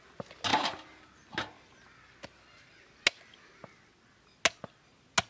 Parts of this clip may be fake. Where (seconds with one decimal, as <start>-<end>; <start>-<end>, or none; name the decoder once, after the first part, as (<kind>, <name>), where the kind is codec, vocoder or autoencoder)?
none